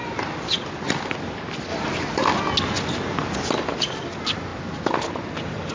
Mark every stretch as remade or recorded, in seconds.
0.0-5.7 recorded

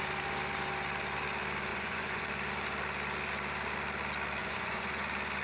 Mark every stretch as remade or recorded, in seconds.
0.0-1.7 recorded; 1.7-2.3 remade; 2.3-4.4 recorded; 4.4-5.0 remade; 5.0-5.4 recorded

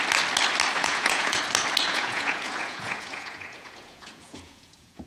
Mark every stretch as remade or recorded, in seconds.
0.0-0.8 recorded; 0.8-1.4 remade; 1.4-1.9 recorded; 1.9-5.1 remade

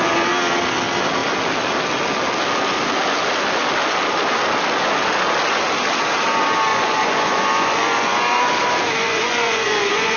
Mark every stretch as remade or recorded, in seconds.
0.0-6.7 recorded; 6.7-8.4 remade; 8.4-9.0 recorded; 9.0-10.2 remade

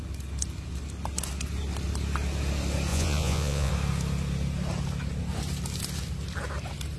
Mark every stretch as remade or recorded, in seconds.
0.0-2.9 recorded; 2.9-3.7 remade; 3.7-7.0 recorded

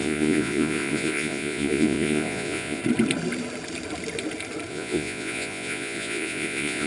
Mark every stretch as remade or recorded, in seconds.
0.0-2.8 remade; 2.8-4.7 recorded; 4.7-6.9 remade

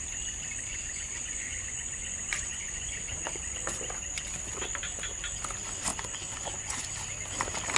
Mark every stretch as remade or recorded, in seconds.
0.0-0.7 recorded; 0.7-3.8 remade; 3.8-5.9 recorded; 5.9-6.9 remade; 6.9-7.8 recorded

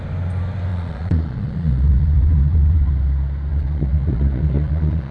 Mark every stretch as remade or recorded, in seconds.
0.0-0.7 recorded; 0.7-2.9 remade; 2.9-3.5 recorded; 3.5-5.1 remade